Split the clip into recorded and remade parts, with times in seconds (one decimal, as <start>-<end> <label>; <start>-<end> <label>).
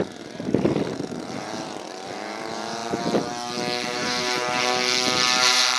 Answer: 0.0-5.8 recorded